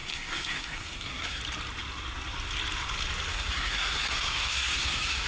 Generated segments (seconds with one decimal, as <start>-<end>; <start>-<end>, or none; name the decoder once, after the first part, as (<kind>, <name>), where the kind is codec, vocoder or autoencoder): 0.0-1.4 (codec, SNAC); 3.3-5.3